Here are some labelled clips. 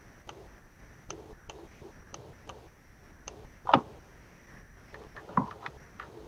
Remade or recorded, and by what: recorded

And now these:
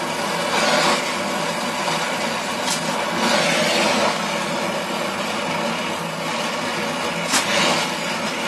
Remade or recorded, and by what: recorded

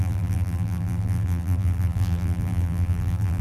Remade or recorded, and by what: remade, vocoder, BigVGAN v2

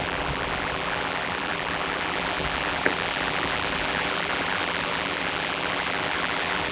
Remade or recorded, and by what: remade, vocoder, BigVGAN v2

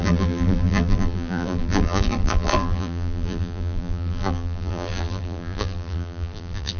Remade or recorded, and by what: remade, vocoder, BigVGAN v2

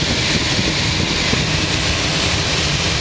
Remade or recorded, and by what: recorded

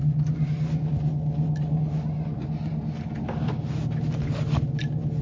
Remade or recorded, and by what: recorded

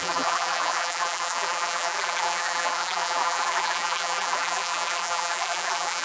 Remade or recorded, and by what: remade, vocoder, BigVGAN v2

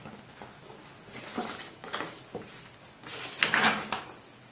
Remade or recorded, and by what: recorded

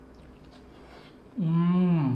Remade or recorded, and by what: recorded